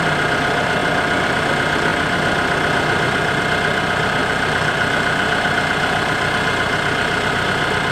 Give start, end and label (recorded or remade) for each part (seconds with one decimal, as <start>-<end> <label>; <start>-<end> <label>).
0.0-4.2 recorded; 4.2-7.3 remade; 7.3-7.9 recorded